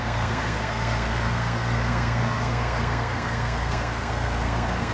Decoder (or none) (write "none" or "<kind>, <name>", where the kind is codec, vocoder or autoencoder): codec, SNAC